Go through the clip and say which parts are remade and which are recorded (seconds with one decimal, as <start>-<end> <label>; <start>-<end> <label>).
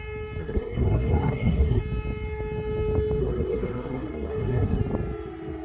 0.0-0.4 recorded; 0.4-1.8 remade; 1.8-3.2 recorded; 3.2-4.8 remade; 4.8-5.6 recorded